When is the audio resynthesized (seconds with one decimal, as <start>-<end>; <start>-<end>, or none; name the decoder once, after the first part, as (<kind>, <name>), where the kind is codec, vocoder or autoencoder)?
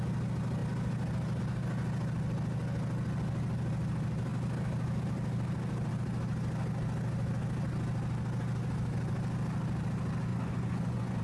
10.3-11.2 (vocoder, Vocos)